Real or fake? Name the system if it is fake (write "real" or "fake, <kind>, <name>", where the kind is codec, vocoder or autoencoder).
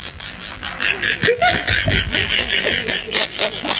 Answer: fake, vocoder, BigVGAN v2